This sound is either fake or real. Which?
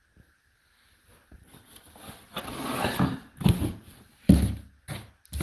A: real